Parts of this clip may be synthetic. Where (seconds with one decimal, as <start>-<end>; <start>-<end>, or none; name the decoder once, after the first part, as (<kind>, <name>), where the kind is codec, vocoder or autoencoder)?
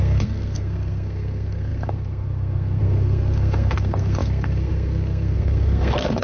0.0-6.2 (codec, SNAC)